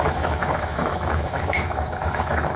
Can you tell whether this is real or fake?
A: fake